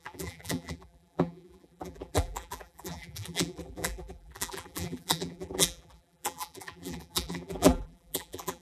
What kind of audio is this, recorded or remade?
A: remade